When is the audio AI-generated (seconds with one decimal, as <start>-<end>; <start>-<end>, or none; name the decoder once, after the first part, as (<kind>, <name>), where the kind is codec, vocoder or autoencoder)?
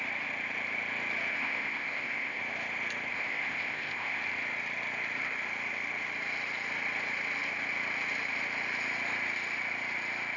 1.3-2.4 (codec, ZipCodec); 3.1-4.2